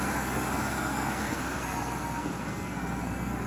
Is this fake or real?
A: fake